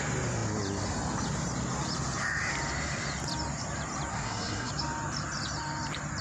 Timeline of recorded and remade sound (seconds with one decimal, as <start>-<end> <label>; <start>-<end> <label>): 0.0-4.1 recorded; 4.1-4.7 remade; 4.7-6.2 recorded